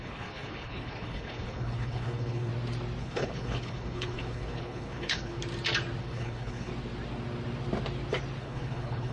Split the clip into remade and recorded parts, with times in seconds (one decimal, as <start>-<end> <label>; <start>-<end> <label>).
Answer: 0.0-2.5 remade; 2.5-3.0 recorded; 3.0-5.4 remade; 5.4-6.0 recorded; 6.0-6.7 remade; 6.7-8.4 recorded; 8.4-9.1 remade